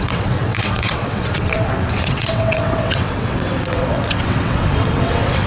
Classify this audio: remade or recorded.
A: remade